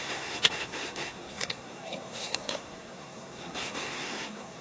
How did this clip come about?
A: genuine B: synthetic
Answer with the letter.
B